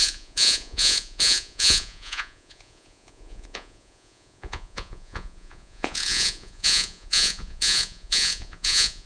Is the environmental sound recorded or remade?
remade